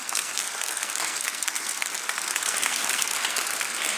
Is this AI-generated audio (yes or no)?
yes